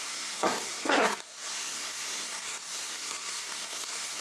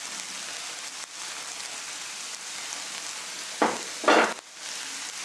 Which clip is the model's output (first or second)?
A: first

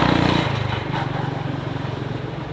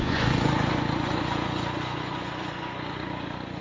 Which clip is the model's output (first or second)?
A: second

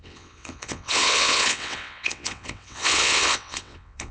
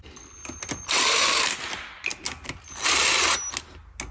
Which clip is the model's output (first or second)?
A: first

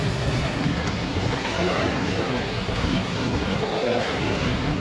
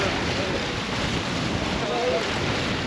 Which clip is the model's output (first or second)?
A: first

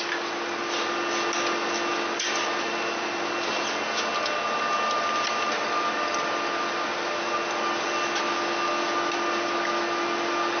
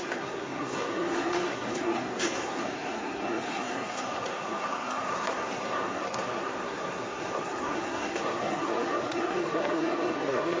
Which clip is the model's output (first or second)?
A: second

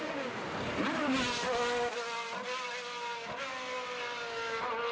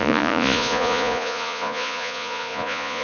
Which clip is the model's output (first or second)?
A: second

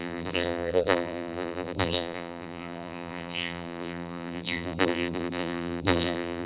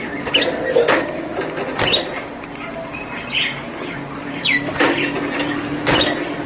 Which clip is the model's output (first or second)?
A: first